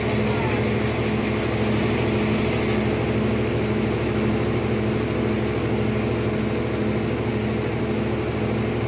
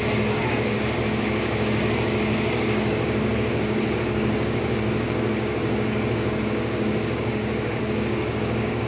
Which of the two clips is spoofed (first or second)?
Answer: second